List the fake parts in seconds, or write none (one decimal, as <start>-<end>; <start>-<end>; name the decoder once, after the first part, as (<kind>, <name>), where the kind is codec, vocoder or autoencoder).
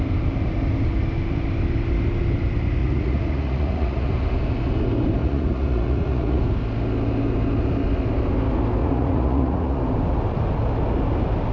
2.8-4.1 (vocoder, Vocos); 5.2-6.4; 8.8-9.8